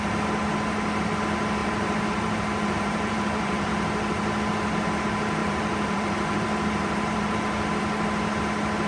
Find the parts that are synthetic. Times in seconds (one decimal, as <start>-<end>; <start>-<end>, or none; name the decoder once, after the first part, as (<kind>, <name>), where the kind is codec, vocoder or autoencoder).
1.6-3.7 (vocoder, BigVGAN v2); 5.4-7.4